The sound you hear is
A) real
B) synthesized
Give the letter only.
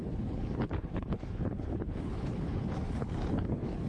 B